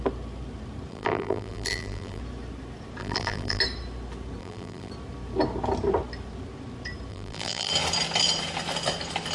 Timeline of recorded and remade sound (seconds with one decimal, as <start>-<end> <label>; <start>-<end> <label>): 0.0-0.9 recorded; 0.9-2.2 remade; 2.2-3.0 recorded; 3.0-3.6 remade; 3.6-4.4 recorded; 4.4-4.9 remade; 4.9-7.1 recorded; 7.1-7.7 remade; 7.7-9.3 recorded